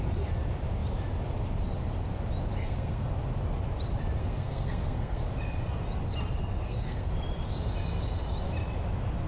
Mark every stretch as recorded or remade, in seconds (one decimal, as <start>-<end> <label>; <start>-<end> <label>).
0.0-2.6 recorded; 2.6-3.1 remade; 3.1-4.2 recorded; 4.2-5.2 remade; 5.2-6.4 recorded; 6.4-7.1 remade; 7.1-9.3 recorded

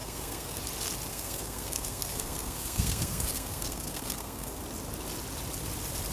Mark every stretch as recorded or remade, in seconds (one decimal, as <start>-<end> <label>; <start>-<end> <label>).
0.0-0.6 remade; 0.6-1.1 recorded; 1.1-4.6 remade; 4.6-6.1 recorded